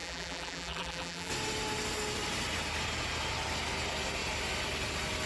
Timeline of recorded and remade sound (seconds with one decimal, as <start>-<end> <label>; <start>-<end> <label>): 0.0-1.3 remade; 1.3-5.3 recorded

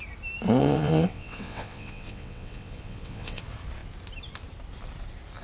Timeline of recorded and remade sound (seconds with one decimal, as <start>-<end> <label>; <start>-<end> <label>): 0.0-0.6 recorded; 0.6-3.4 remade; 3.4-5.4 recorded

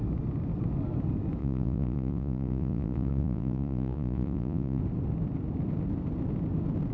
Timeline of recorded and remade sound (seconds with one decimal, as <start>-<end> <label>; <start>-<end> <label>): 0.0-1.4 recorded; 1.4-4.8 remade; 4.8-6.9 recorded

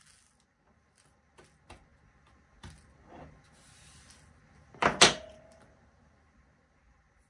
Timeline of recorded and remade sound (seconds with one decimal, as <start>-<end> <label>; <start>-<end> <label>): 0.0-7.3 recorded

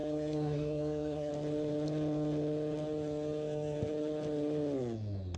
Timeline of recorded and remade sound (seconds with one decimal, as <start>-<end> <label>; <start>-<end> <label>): 0.0-1.3 remade; 1.3-5.4 recorded

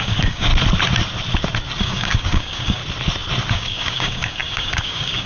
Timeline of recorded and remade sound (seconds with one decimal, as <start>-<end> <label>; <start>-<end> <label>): 0.0-0.5 remade; 0.5-1.8 recorded; 1.8-2.8 remade; 2.8-3.5 recorded; 3.5-5.3 remade

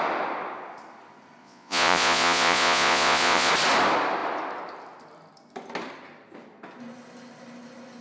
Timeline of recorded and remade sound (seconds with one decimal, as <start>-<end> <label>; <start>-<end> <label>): 0.0-1.4 recorded; 1.4-3.5 remade; 3.5-8.0 recorded